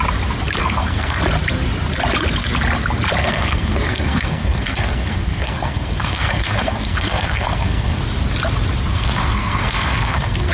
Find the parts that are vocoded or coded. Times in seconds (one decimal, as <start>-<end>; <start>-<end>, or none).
0.6-1.2; 3.2-8.0; 8.9-10.5